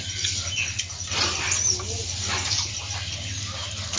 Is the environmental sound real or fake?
real